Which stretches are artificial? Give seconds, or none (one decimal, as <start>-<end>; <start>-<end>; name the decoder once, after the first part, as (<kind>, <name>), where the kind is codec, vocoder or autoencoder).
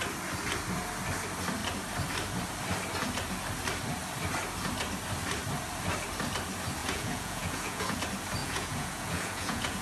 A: 6.8-8.0 (vocoder, Vocos); 8.4-9.8